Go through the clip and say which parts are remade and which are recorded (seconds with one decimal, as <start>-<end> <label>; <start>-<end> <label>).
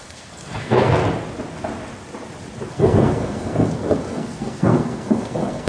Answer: 0.0-1.0 remade; 1.0-2.7 recorded; 2.7-5.7 remade